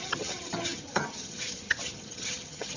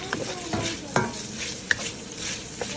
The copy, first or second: first